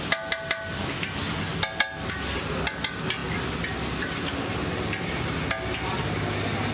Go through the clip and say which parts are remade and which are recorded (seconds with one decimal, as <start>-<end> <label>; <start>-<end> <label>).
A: 0.0-6.7 recorded